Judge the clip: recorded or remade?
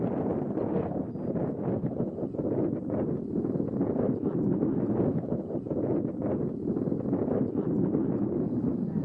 recorded